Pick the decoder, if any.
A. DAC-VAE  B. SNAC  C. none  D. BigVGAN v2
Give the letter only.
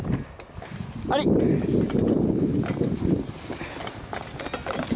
C